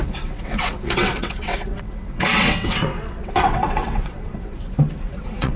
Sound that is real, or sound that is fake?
fake